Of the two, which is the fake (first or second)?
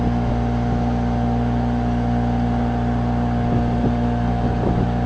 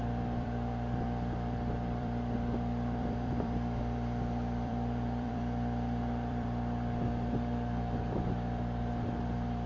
second